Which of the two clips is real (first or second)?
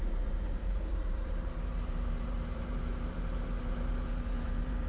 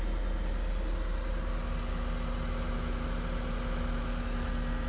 second